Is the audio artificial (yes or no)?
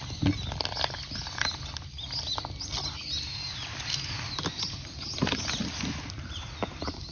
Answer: no